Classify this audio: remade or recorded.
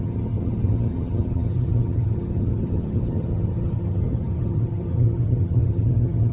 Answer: remade